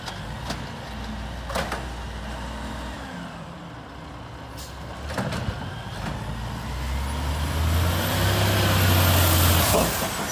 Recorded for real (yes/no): yes